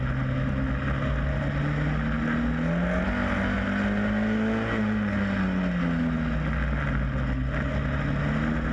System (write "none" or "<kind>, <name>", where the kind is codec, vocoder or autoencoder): none